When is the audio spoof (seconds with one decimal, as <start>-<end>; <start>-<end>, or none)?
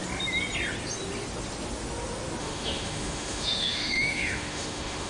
2.4-5.1